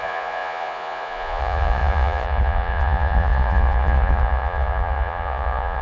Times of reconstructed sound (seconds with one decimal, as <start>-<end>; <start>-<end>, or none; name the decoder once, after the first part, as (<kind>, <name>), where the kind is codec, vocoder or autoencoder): 0.0-5.8 (vocoder, Vocos)